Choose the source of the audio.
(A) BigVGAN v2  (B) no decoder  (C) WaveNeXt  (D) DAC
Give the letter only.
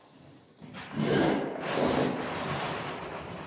A